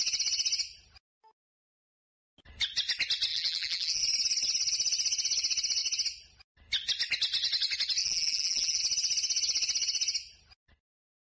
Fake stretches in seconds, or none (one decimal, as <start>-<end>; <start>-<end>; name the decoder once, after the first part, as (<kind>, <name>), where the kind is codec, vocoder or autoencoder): 3.3-4.0 (vocoder, BigVGAN v2); 8.0-8.8